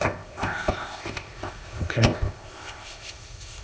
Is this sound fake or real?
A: fake